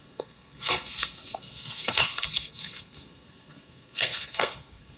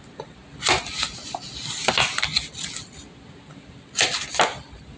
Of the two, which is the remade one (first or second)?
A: first